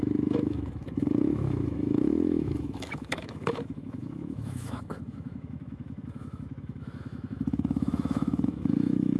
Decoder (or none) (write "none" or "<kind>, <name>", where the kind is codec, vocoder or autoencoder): autoencoder, DAC-VAE